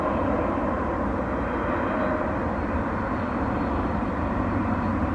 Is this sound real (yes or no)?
yes